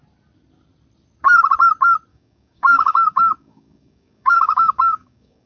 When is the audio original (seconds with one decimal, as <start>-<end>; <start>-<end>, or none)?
0.0-2.1